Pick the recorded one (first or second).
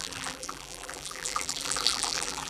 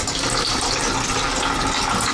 second